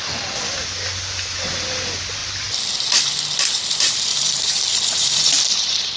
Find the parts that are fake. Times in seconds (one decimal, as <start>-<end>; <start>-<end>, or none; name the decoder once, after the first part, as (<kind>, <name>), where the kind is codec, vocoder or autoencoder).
4.1-5.4 (vocoder, BigVGAN v2)